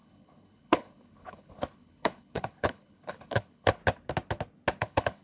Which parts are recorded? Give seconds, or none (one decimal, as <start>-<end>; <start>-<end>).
3.8-4.8